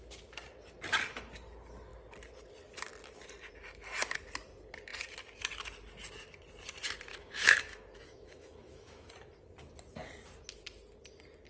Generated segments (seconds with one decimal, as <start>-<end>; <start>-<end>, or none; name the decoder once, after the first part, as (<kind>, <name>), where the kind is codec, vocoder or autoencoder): 7.1-9.1 (autoencoder, DAC-VAE)